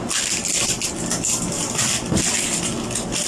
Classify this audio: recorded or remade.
recorded